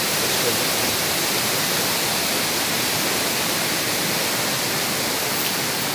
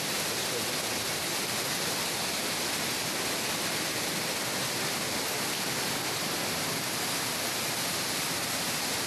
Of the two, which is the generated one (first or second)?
first